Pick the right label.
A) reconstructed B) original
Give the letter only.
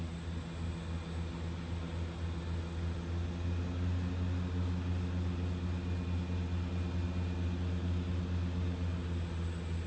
B